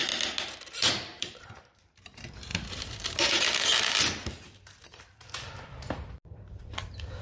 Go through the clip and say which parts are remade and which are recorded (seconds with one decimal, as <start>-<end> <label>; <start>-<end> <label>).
0.0-0.8 recorded; 0.8-7.2 remade